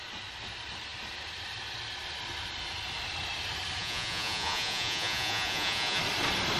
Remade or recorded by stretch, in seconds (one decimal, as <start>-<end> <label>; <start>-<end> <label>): 0.0-3.8 recorded; 3.8-6.0 remade; 6.0-6.6 recorded